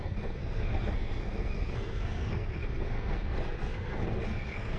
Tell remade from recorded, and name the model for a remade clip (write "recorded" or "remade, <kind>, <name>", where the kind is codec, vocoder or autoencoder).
remade, codec, SNAC